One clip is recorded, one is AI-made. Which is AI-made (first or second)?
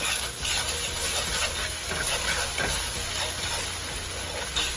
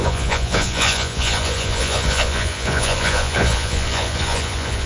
second